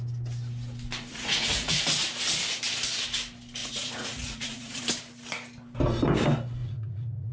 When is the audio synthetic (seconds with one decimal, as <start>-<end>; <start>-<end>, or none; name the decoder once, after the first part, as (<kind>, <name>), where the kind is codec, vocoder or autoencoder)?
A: 1.1-1.8 (vocoder, Vocos); 3.6-4.8; 6.6-7.3